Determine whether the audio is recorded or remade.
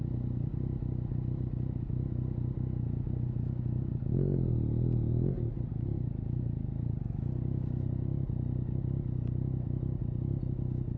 recorded